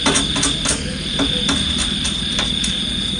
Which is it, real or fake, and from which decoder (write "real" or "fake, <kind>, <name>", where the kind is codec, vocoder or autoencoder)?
real